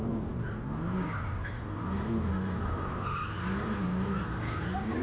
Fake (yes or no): no